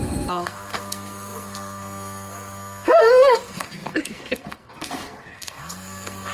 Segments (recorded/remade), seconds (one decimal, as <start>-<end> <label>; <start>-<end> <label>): 0.0-6.3 remade